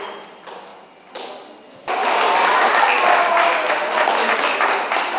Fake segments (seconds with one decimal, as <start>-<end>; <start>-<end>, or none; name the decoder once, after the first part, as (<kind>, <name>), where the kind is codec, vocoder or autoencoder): none